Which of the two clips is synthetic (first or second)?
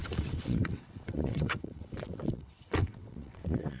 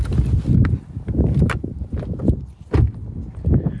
first